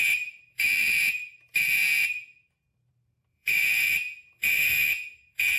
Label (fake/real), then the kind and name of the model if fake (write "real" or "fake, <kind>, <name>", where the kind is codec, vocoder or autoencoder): fake, vocoder, BigVGAN v2